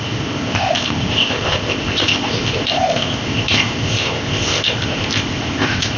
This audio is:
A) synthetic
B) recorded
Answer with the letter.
A